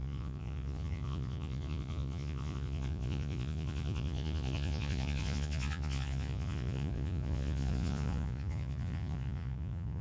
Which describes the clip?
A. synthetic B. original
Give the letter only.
A